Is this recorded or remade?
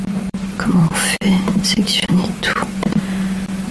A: remade